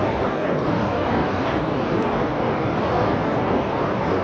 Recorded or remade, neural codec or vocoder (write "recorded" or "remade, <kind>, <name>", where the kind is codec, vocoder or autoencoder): remade, codec, DAC